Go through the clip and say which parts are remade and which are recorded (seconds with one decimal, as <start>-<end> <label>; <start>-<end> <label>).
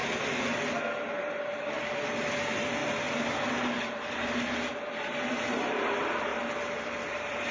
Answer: 0.0-1.2 recorded; 1.2-2.8 remade; 2.8-3.5 recorded; 3.5-6.3 remade; 6.3-7.1 recorded; 7.1-7.5 remade